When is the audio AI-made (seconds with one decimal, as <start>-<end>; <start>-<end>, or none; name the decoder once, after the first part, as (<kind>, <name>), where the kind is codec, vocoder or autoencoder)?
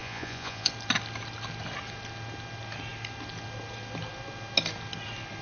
0.0-0.7 (vocoder, Vocos)